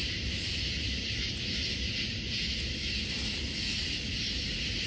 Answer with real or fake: real